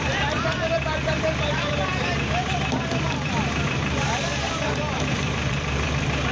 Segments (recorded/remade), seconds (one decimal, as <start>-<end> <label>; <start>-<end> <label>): 0.0-1.9 remade; 1.9-2.9 recorded; 2.9-6.3 remade